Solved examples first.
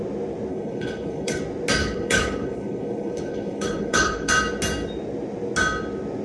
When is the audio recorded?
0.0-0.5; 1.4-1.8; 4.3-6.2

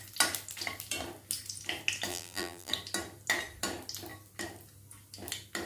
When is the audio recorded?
0.0-2.1; 2.7-5.7

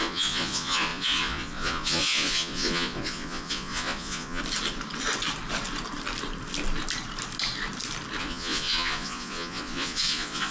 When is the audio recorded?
4.4-8.2